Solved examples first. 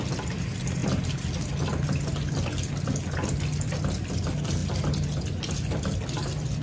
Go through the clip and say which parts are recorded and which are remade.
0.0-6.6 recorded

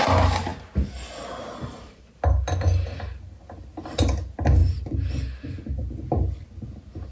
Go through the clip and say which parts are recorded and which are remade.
0.0-7.1 recorded

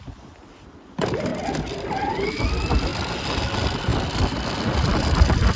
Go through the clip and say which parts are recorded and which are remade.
0.0-5.6 recorded

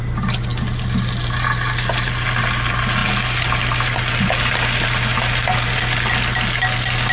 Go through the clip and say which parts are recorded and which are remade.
0.0-7.1 recorded

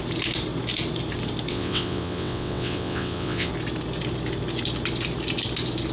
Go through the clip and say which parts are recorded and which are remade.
0.0-1.5 recorded; 1.5-3.5 remade; 3.5-5.9 recorded

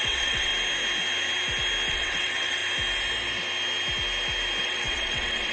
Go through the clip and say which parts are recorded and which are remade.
0.0-0.5 remade; 0.5-1.9 recorded; 1.9-2.6 remade; 2.6-4.6 recorded; 4.6-5.5 remade

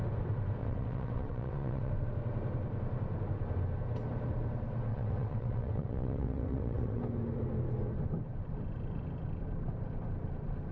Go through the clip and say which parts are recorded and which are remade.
0.0-0.6 recorded; 0.6-1.9 remade; 1.9-4.9 recorded; 4.9-7.0 remade; 7.0-10.7 recorded

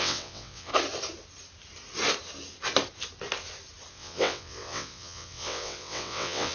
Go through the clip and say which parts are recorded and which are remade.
0.0-0.7 remade; 0.7-3.9 recorded; 3.9-6.5 remade